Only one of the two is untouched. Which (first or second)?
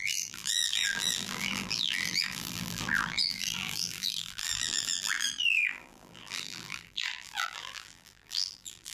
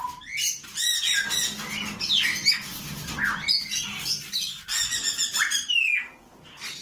second